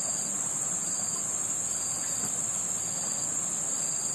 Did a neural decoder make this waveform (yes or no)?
no